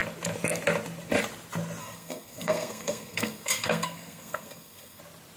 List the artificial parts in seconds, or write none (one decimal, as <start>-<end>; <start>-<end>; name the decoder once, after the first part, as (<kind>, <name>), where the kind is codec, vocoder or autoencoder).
1.8-5.0 (codec, SNAC)